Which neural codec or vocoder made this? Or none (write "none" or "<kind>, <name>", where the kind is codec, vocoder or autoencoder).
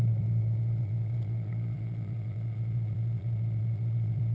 vocoder, Vocos